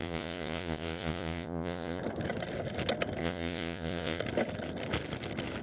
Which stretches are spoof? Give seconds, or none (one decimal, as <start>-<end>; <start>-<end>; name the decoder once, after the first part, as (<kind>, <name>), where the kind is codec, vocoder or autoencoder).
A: 0.0-2.0 (vocoder, Vocos); 3.2-4.2